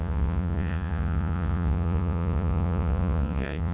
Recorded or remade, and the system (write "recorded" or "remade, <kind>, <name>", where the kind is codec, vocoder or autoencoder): remade, vocoder, Vocos